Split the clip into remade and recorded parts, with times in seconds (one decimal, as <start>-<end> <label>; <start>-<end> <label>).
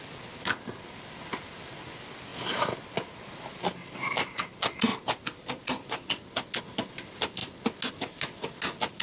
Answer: 0.0-9.0 recorded